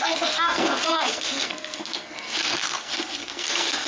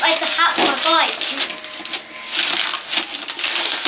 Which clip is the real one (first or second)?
second